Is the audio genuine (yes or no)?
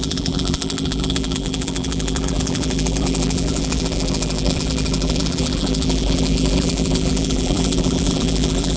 no